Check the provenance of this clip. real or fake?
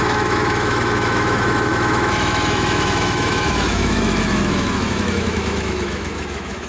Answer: fake